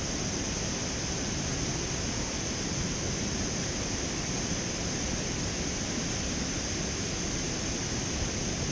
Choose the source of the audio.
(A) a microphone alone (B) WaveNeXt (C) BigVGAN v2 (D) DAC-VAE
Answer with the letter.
A